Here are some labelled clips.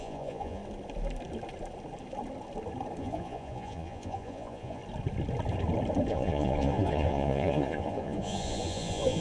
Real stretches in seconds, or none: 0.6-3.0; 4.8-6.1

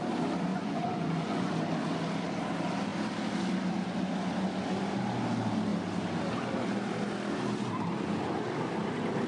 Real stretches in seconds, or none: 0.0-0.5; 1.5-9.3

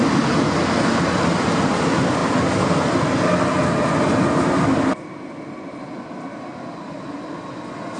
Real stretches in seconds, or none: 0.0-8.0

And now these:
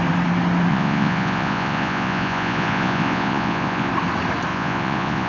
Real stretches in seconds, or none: 0.0-0.7; 3.9-4.5

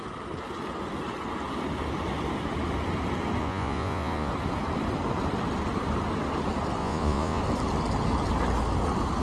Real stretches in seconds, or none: 0.0-3.4; 4.3-6.8; 7.4-9.2